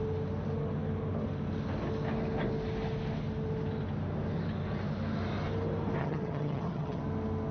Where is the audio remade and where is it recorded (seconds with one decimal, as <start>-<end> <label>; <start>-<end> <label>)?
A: 0.0-6.0 recorded; 6.0-7.0 remade; 7.0-7.5 recorded

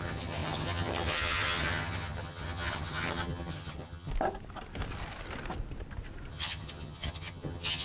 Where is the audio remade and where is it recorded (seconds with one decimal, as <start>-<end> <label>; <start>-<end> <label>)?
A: 0.0-4.1 remade; 4.1-6.3 recorded; 6.3-7.8 remade

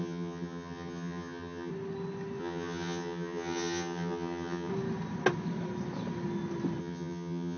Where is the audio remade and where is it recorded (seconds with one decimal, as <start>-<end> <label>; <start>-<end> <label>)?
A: 0.0-1.7 remade; 1.7-2.4 recorded; 2.4-4.7 remade; 4.7-6.8 recorded; 6.8-7.6 remade

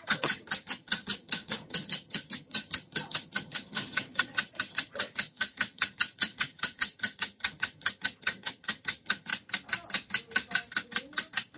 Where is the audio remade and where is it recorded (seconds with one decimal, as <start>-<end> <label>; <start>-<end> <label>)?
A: 0.0-9.3 remade; 9.3-11.6 recorded